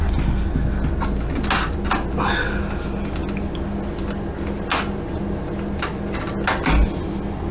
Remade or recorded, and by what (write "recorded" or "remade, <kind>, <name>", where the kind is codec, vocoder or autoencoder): recorded